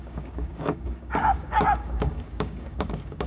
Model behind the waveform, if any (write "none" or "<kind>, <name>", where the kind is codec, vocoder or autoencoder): codec, DAC